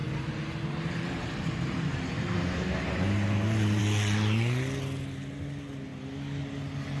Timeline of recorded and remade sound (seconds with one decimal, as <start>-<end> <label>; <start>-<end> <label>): 0.0-3.8 remade; 3.8-7.0 recorded